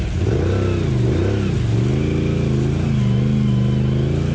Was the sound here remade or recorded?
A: recorded